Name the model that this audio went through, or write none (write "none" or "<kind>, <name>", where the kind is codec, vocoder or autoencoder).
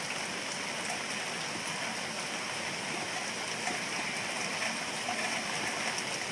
none